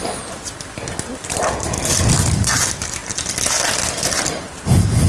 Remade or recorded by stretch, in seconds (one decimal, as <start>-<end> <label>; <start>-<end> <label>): 0.0-5.1 recorded